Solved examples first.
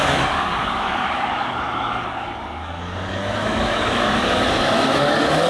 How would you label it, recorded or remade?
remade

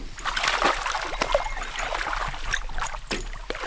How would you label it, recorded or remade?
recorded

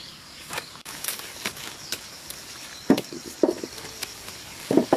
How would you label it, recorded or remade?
remade